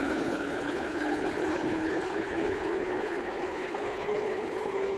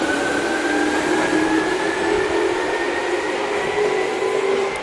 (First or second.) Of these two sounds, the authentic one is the second